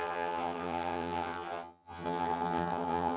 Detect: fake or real fake